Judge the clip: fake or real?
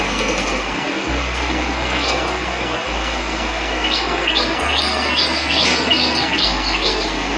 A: fake